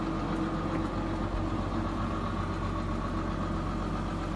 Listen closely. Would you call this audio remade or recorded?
recorded